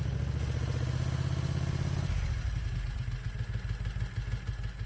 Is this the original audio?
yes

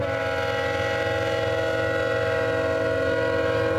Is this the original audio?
yes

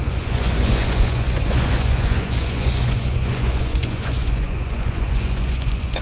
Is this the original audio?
no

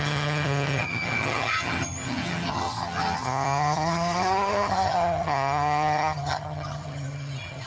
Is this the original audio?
no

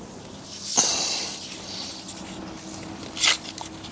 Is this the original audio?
yes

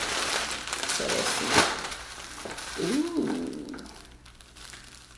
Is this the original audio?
yes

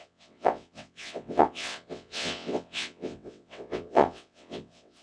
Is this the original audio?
no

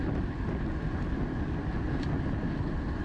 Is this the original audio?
yes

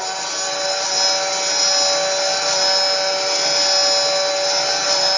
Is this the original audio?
yes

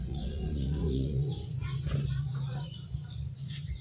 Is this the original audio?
no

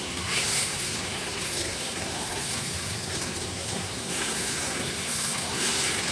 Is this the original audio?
no